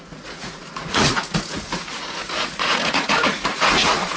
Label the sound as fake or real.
fake